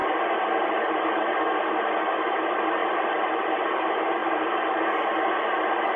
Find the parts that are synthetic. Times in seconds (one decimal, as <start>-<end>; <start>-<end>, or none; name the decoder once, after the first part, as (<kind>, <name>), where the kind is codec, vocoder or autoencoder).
2.8-3.4 (vocoder, BigVGAN v2)